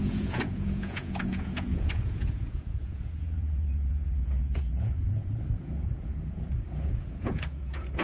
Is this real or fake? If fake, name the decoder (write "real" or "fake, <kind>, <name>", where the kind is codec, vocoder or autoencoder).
fake, vocoder, Vocos